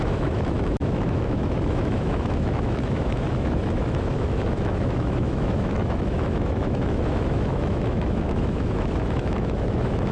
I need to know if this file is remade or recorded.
remade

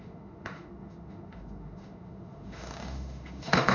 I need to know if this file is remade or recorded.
remade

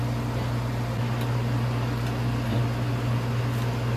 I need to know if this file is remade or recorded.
recorded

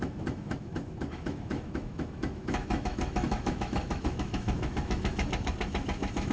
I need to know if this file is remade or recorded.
remade